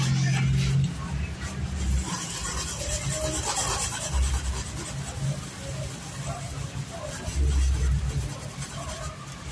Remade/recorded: recorded